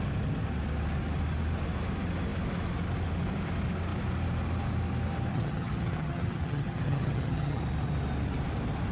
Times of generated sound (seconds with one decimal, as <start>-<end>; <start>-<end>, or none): 5.3-7.6